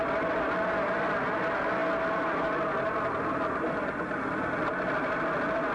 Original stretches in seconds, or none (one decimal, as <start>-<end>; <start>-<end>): 0.0-5.7